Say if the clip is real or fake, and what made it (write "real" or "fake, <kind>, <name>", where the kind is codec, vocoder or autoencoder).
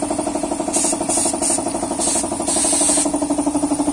real